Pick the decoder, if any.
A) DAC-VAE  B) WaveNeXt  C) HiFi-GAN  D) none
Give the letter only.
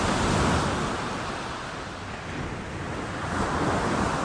D